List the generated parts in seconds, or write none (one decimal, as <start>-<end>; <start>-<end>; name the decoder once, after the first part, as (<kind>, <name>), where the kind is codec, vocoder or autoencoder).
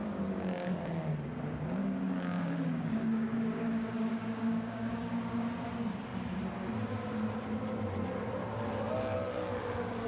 0.0-0.9 (codec, DAC); 1.8-5.5